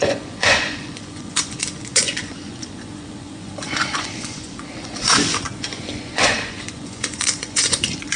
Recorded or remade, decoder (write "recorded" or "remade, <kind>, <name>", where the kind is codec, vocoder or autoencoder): remade, vocoder, Vocos